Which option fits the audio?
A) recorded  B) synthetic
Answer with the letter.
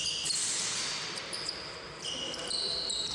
A